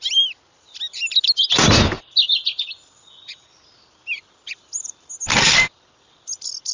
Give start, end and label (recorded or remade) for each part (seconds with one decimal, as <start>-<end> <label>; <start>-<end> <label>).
0.0-6.7 recorded